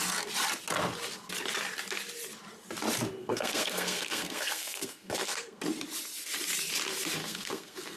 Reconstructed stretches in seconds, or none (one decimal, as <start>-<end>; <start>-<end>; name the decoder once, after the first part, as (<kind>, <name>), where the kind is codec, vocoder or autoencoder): 3.2-5.6 (codec, SNAC); 7.2-8.0